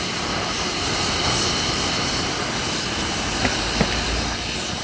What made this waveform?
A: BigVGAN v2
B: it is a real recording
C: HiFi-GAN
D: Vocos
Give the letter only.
B